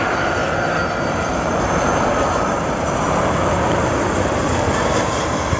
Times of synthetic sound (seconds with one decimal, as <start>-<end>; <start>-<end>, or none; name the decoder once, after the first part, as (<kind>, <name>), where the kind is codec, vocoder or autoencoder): 0.0-0.4 (vocoder, BigVGAN v2); 1.0-5.6

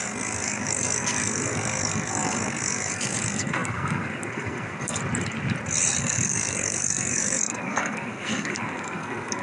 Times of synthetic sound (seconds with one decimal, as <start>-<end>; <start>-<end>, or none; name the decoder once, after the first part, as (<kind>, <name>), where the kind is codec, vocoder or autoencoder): 0.0-5.0 (codec, SNAC); 6.0-9.4

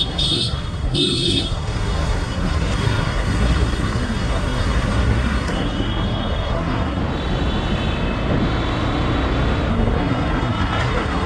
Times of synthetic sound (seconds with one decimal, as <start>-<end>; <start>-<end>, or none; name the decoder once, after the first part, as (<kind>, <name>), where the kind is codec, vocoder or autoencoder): 0.0-7.0 (codec, SNAC); 9.7-11.3

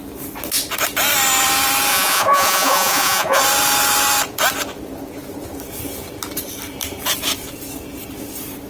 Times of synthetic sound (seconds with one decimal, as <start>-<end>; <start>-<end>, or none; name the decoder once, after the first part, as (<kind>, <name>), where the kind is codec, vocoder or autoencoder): 1.9-3.4 (vocoder, Vocos)

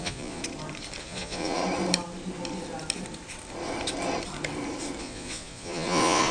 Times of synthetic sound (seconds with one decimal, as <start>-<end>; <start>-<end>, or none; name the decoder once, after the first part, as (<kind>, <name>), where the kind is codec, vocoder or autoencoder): 0.0-0.4 (vocoder, Vocos); 1.0-1.6; 5.0-6.3